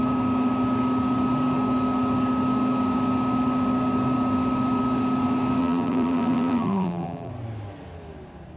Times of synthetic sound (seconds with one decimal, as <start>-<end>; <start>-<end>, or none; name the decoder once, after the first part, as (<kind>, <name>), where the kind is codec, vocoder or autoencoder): 5.6-7.3 (vocoder, BigVGAN v2)